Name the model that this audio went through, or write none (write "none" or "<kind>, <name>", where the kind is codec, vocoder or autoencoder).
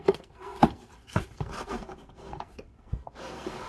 codec, SNAC